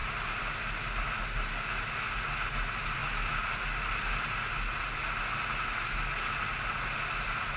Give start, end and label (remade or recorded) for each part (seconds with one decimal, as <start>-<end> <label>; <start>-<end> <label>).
0.0-7.6 recorded